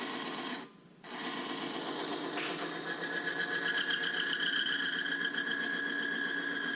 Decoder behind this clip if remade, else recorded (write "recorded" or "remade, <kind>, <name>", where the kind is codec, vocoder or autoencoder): recorded